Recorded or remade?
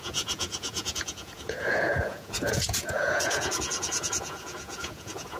remade